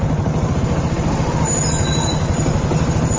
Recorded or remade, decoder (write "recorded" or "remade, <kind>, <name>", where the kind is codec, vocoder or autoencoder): recorded